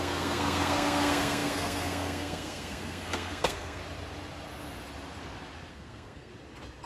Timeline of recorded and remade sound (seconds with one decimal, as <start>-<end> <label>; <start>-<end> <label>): 0.0-3.8 remade; 3.8-5.7 recorded; 5.7-6.3 remade; 6.3-6.9 recorded

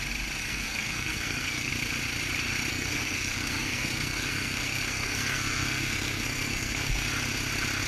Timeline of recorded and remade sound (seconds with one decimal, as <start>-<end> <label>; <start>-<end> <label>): 0.0-0.4 recorded; 0.4-1.7 remade; 1.7-2.7 recorded; 2.7-7.1 remade; 7.1-7.9 recorded